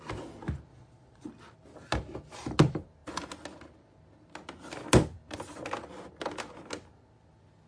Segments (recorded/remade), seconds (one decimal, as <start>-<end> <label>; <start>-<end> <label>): 0.0-0.7 recorded; 0.7-1.3 remade; 1.3-7.7 recorded